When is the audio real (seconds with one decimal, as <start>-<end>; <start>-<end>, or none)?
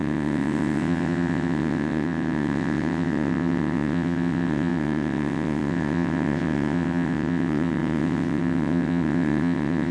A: none